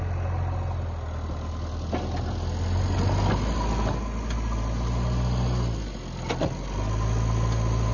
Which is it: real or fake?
real